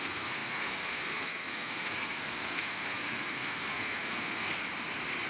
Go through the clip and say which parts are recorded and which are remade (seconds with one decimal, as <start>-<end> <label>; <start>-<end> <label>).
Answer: 0.0-4.6 remade; 4.6-5.3 recorded